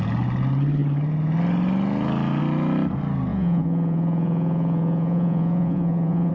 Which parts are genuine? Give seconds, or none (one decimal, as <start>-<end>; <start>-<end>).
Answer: 0.0-3.3